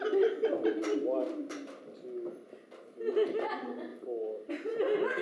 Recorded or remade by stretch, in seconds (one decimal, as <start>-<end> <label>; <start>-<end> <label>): 0.0-5.2 recorded